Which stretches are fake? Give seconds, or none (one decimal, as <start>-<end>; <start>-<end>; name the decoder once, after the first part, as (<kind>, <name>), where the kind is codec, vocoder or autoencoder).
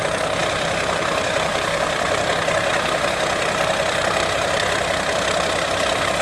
0.4-2.3 (vocoder, BigVGAN v2)